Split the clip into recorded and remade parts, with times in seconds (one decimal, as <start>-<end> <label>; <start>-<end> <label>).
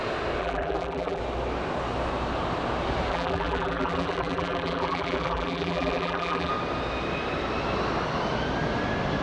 0.0-0.4 recorded; 0.4-1.2 remade; 1.2-3.1 recorded; 3.1-6.5 remade; 6.5-9.2 recorded